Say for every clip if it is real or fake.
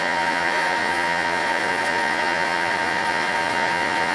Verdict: fake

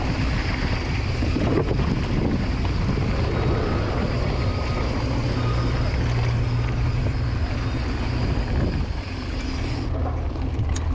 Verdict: real